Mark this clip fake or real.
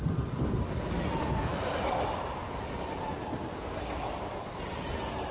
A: real